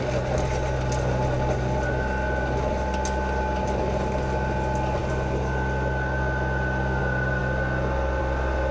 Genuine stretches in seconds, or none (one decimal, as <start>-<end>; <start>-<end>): 0.0-8.7